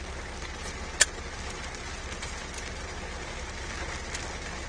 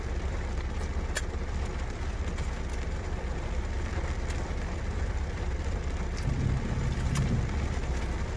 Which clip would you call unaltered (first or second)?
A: first